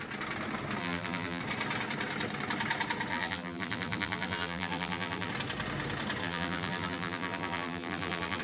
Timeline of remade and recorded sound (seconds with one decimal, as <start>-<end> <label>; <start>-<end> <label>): 0.0-0.8 recorded; 0.8-1.4 remade; 1.4-3.1 recorded; 3.1-5.3 remade; 5.3-6.2 recorded; 6.2-8.4 remade